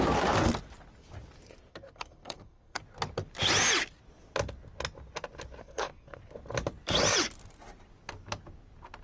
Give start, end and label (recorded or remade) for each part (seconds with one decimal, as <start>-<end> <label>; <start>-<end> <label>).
0.0-1.7 recorded; 1.7-2.8 remade; 2.8-5.6 recorded; 5.6-6.2 remade; 6.2-9.0 recorded